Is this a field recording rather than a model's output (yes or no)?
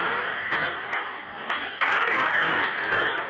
no